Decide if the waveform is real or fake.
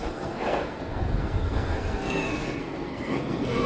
fake